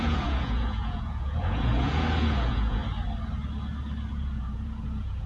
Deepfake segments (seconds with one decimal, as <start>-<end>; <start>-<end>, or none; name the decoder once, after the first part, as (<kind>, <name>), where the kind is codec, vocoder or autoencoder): 0.0-2.8 (vocoder, Vocos); 4.1-5.3